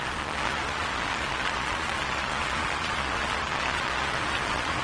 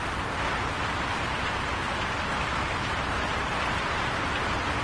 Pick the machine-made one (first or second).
first